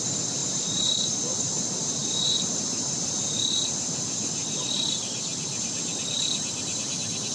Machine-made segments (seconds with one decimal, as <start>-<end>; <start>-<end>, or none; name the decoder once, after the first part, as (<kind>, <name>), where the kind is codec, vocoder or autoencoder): 0.4-1.6 (vocoder, BigVGAN v2); 2.0-3.2; 4.4-5.9

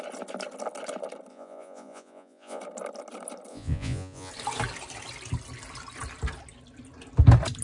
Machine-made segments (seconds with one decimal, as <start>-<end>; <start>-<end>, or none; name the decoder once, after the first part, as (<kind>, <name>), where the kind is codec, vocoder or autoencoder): 1.3-2.6 (vocoder, Vocos); 3.5-4.3

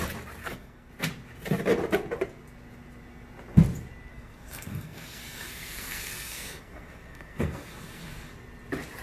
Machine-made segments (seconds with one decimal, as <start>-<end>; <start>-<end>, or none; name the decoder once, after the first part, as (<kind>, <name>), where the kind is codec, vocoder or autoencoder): 0.4-0.9 (codec, SNAC); 4.1-8.3

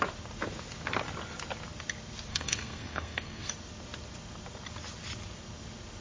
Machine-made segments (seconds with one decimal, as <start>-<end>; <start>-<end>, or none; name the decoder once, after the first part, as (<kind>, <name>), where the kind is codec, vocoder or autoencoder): 2.3-3.5 (codec, SNAC)